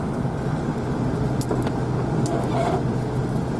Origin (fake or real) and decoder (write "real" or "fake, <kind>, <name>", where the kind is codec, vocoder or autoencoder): real